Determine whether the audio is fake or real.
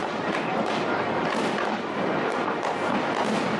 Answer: real